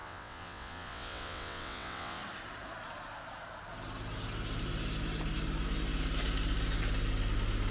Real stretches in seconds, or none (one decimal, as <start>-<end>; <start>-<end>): 2.2-7.7